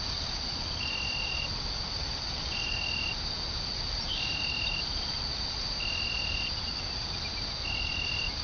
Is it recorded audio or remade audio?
recorded